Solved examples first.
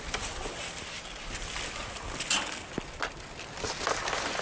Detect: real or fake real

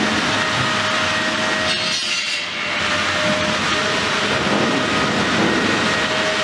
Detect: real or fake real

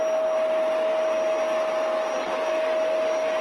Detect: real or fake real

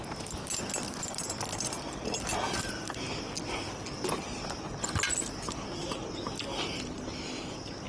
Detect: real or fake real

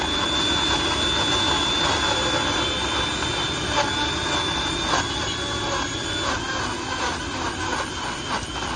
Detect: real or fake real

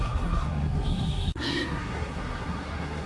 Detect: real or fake fake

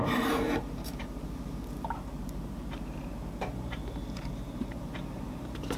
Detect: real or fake fake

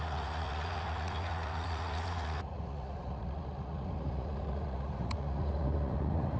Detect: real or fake fake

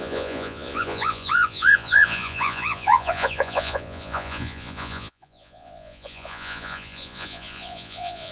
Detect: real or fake fake